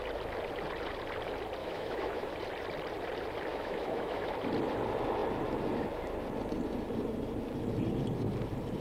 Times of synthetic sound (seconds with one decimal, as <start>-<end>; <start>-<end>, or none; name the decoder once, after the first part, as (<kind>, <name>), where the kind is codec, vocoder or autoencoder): 1.6-2.3 (autoencoder, DAC-VAE); 3.5-4.3